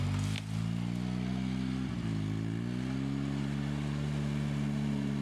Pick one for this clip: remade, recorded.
recorded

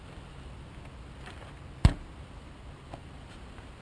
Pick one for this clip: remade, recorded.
recorded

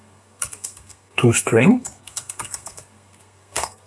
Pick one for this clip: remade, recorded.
remade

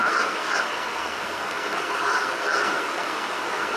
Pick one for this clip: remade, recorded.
remade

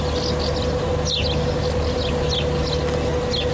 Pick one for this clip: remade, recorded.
recorded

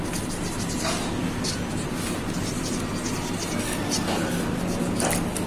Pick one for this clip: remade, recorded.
recorded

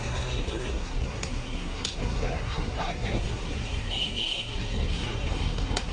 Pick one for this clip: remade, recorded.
remade